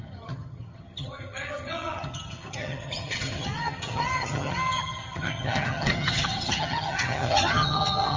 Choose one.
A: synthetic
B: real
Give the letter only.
A